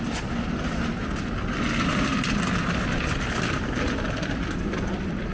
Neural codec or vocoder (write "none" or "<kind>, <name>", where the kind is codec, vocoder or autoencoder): none